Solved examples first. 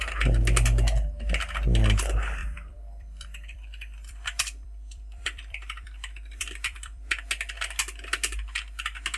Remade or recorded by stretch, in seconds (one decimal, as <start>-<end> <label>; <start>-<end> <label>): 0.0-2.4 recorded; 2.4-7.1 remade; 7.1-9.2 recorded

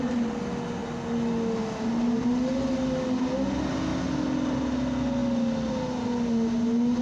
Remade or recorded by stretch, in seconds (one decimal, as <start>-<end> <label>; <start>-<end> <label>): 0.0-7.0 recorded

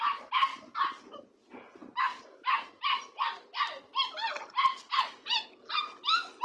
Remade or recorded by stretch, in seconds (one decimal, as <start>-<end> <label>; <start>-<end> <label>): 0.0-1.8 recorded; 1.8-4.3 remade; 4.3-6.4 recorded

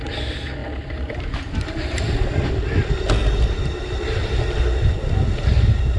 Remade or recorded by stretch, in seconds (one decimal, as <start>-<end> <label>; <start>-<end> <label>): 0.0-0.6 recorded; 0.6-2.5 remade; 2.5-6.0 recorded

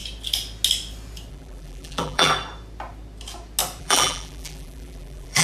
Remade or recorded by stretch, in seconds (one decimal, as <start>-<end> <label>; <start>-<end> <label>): 0.0-1.3 recorded; 1.3-2.3 remade; 2.3-3.8 recorded; 3.8-5.4 remade

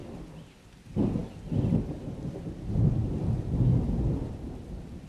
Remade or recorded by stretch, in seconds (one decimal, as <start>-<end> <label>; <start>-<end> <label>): 0.0-1.2 remade; 1.2-4.3 recorded; 4.3-5.1 remade

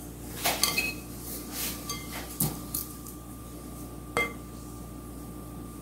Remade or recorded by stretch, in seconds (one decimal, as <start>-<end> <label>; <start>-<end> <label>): 0.0-2.8 recorded; 2.8-3.4 remade; 3.4-5.8 recorded